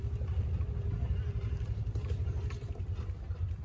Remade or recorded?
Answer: recorded